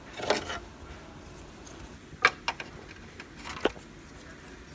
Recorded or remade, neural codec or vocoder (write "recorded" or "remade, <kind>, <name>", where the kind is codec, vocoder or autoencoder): recorded